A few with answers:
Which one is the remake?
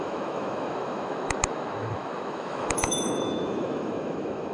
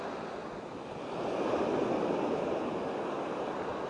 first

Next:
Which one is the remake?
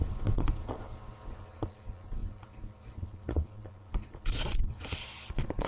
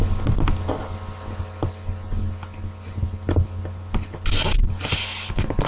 first